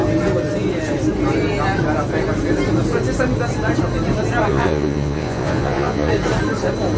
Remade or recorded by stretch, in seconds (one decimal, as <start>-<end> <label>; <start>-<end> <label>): 0.0-4.5 recorded; 4.5-6.1 remade; 6.1-7.0 recorded